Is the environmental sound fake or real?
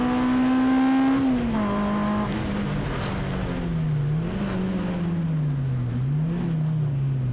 real